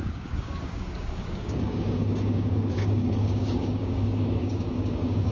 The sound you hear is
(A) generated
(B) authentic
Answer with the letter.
A